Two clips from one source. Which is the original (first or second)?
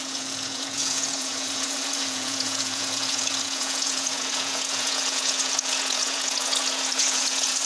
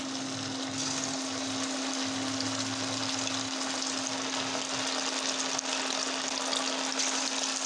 second